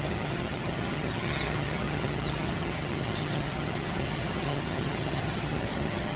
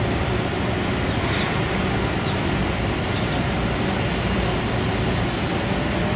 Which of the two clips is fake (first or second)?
first